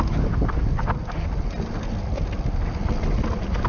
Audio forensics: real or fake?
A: real